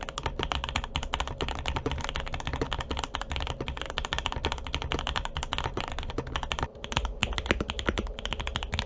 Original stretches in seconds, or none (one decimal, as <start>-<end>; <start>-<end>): 0.0-8.9